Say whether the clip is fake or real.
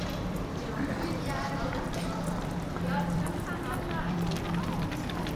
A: fake